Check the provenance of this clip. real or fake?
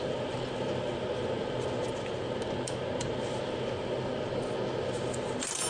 real